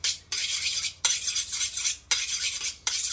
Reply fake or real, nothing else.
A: real